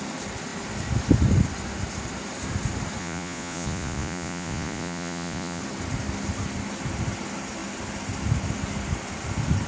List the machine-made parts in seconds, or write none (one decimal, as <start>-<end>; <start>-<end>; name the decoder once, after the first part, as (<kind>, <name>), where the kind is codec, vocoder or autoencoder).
3.0-5.6 (vocoder, Vocos)